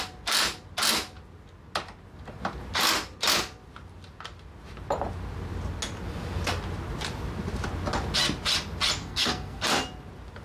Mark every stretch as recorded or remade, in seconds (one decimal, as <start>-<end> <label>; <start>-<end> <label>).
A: 0.0-9.0 recorded; 9.0-9.6 remade; 9.6-10.4 recorded